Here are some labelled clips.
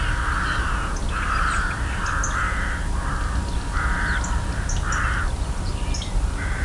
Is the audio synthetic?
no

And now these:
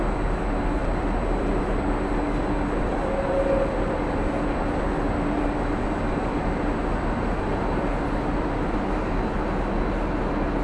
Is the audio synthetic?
no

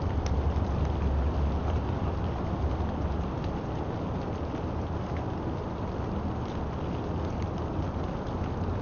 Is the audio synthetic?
no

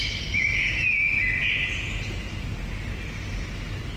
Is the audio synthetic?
no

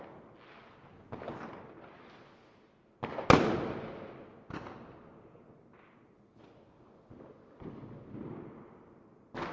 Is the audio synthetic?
no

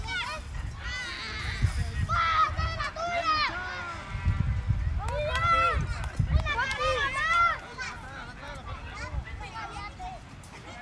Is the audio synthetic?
no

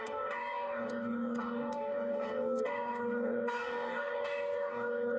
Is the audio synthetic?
yes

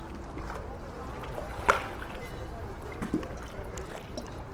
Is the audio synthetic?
no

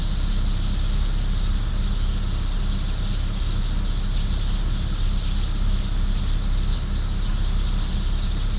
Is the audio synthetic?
no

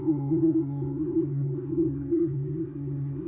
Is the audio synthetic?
yes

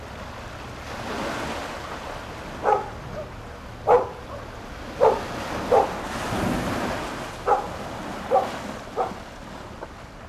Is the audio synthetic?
no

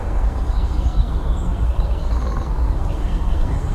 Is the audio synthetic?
yes